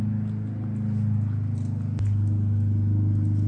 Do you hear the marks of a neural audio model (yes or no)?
no